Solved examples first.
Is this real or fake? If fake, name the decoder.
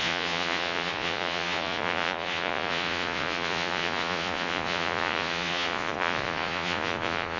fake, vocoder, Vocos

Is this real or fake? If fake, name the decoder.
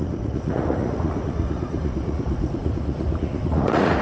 fake, vocoder, Vocos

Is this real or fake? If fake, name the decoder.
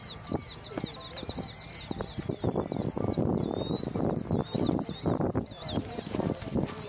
real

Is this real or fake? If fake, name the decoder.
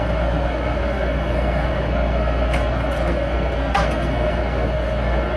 fake, codec, SNAC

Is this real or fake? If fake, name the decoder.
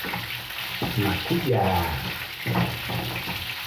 real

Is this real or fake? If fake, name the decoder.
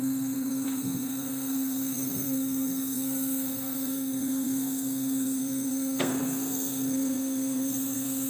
fake, codec, SNAC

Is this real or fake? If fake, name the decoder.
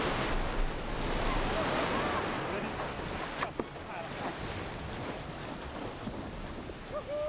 real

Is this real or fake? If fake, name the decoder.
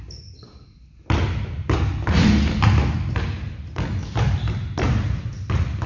real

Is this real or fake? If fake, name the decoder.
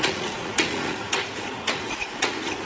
fake, vocoder, Vocos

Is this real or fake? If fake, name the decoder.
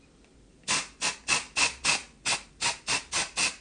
real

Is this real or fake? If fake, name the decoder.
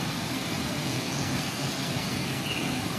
fake, codec, SNAC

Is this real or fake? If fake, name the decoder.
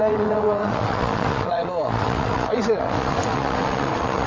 fake, vocoder, WaveNeXt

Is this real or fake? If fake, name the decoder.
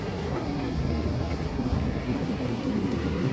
fake, codec, SNAC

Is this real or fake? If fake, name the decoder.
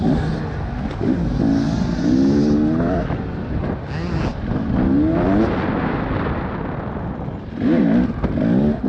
real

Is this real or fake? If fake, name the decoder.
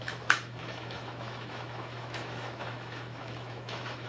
fake, autoencoder, DAC-VAE